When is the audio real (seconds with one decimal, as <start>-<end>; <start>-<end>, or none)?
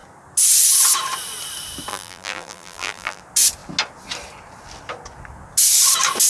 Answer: 0.0-1.9; 3.2-6.3